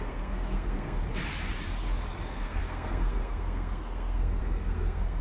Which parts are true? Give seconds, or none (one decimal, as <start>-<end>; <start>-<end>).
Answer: 1.0-2.2

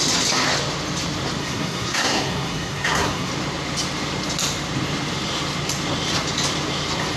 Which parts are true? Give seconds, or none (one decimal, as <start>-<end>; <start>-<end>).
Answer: 0.0-1.4; 3.3-7.2

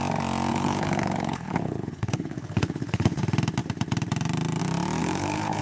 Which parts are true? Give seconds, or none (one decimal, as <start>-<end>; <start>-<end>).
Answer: 0.0-0.5; 3.2-5.0

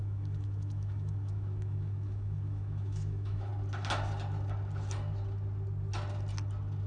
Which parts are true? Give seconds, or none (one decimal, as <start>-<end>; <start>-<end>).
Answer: 3.5-6.9

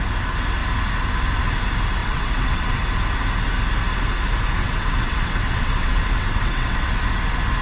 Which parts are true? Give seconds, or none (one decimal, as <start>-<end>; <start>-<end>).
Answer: 0.0-2.0; 2.9-4.6; 6.9-7.6

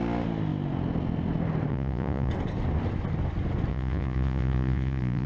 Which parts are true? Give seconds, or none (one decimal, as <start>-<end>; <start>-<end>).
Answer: 0.0-1.7; 2.3-3.7

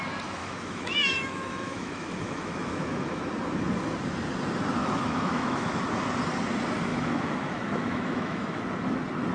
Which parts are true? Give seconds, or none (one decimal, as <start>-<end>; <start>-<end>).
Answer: 0.0-0.4; 3.2-4.8; 5.8-6.9; 8.6-9.3